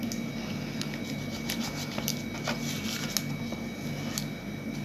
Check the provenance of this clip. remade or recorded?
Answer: recorded